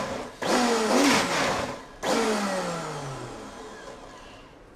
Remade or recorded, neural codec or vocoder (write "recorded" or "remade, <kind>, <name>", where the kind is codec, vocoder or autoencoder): recorded